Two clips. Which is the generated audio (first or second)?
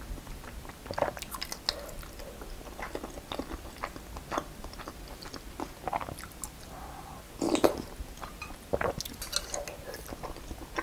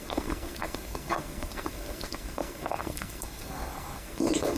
second